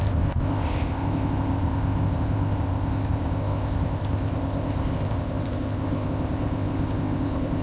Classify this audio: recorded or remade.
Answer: remade